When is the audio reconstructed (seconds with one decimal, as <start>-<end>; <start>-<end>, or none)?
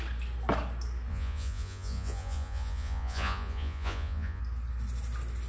1.1-4.4